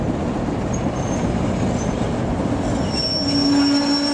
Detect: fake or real real